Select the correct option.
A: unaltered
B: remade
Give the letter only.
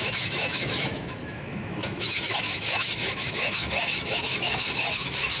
B